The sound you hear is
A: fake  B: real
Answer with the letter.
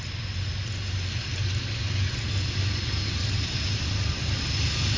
B